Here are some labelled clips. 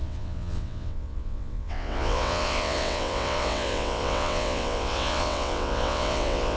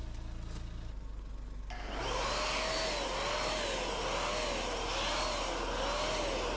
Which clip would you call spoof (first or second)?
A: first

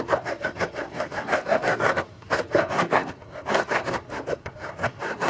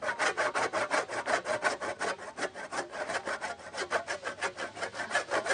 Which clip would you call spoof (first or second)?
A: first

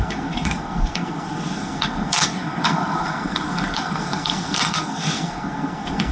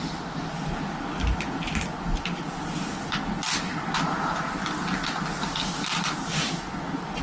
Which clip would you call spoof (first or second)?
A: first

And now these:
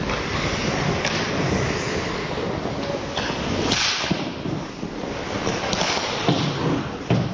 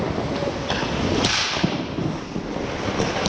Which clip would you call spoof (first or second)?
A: second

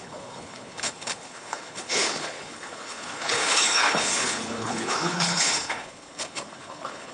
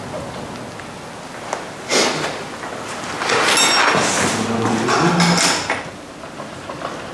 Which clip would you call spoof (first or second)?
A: first